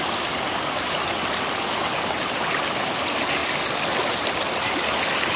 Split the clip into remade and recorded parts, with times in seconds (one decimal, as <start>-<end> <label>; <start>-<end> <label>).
0.0-5.4 recorded